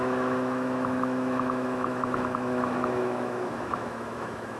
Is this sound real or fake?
fake